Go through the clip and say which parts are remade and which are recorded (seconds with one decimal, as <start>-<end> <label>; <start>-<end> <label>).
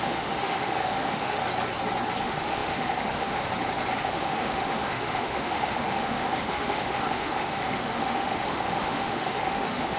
0.0-1.4 remade; 1.4-2.2 recorded; 2.2-3.5 remade; 3.5-4.0 recorded; 4.0-10.0 remade